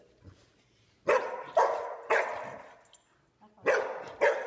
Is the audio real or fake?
real